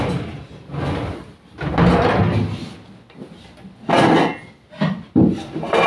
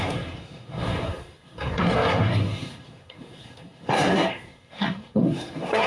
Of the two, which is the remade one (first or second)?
second